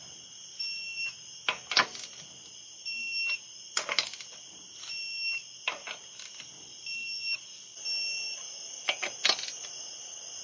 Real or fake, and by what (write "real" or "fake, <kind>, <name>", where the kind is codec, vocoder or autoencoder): real